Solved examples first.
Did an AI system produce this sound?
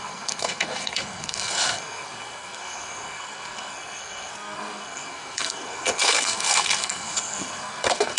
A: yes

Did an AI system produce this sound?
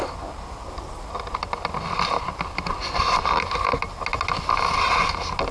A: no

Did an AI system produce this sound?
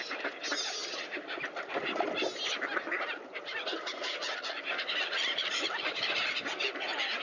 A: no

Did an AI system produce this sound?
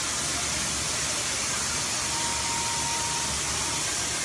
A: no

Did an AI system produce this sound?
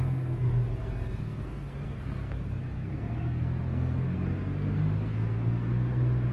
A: yes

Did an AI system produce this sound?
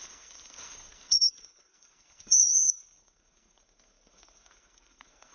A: yes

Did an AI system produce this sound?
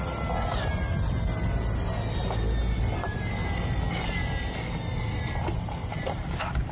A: no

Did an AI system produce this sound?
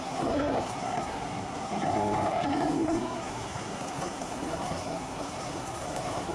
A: yes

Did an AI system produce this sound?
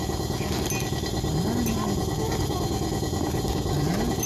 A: no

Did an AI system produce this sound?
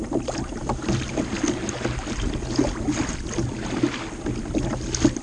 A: no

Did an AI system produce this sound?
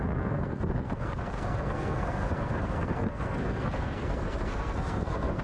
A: yes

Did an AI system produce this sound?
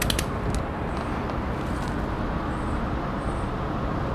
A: no